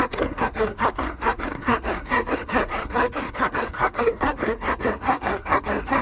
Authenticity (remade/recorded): remade